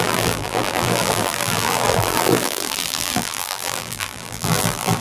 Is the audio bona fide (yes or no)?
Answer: no